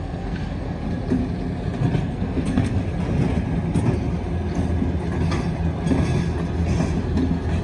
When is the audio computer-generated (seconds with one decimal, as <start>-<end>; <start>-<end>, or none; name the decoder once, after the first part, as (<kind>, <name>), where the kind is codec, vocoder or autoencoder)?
0.0-0.8 (codec, SNAC); 2.0-2.8